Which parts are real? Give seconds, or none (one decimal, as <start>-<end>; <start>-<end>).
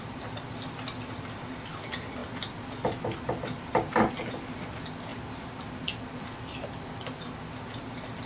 0.0-8.3